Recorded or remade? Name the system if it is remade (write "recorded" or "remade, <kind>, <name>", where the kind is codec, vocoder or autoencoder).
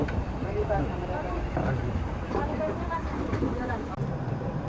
remade, vocoder, BigVGAN v2